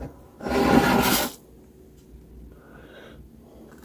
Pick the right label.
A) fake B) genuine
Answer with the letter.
B